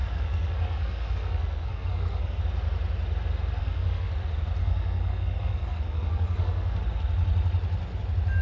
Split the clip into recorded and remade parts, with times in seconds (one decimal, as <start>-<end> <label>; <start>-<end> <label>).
0.0-2.4 remade; 2.4-3.6 recorded; 3.6-4.1 remade; 4.1-4.6 recorded; 4.6-6.8 remade; 6.8-8.4 recorded